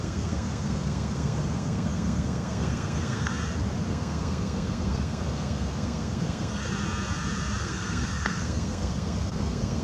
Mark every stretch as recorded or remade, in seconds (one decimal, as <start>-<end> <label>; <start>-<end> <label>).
0.0-3.3 remade; 3.3-3.9 recorded; 3.9-6.6 remade; 6.6-7.6 recorded; 7.6-9.8 remade